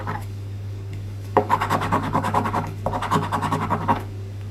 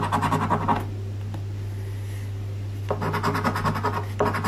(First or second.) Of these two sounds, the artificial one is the first